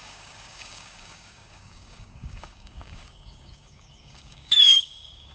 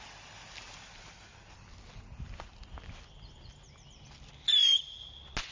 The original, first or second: second